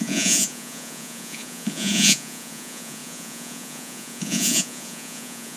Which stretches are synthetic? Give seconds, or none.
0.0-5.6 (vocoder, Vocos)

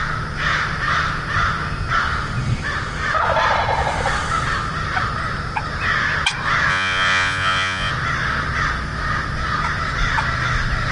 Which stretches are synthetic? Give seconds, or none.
6.7-7.9 (vocoder, Vocos)

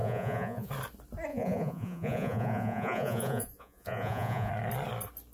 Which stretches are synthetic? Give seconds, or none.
0.0-0.7 (vocoder, Vocos); 1.3-4.5

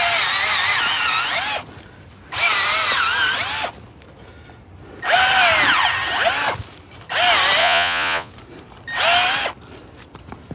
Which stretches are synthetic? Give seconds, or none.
7.6-8.3 (vocoder, Vocos)

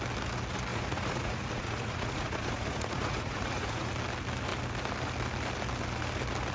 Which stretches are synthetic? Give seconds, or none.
0.7-3.9 (vocoder, Vocos)

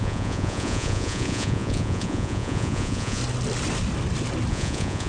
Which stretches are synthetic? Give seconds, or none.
0.0-3.2 (vocoder, Vocos); 4.5-5.1